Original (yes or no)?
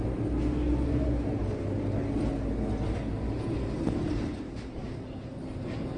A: yes